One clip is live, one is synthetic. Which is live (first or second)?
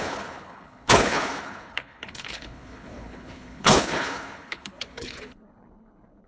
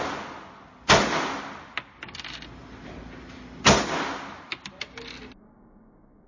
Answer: second